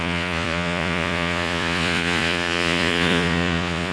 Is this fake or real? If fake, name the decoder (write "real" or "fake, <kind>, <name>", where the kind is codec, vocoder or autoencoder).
fake, vocoder, Vocos